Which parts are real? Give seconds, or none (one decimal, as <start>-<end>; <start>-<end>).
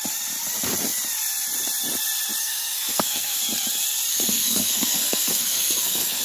0.0-2.4; 3.4-4.1